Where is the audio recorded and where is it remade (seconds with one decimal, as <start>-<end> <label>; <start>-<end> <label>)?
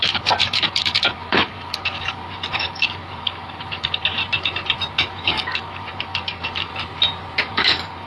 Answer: 0.0-4.2 remade; 4.2-4.9 recorded; 4.9-6.7 remade; 6.7-7.4 recorded; 7.4-8.1 remade